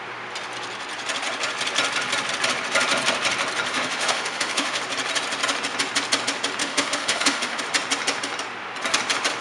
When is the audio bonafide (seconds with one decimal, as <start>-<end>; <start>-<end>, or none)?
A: 0.0-3.7; 4.8-6.6; 7.6-9.4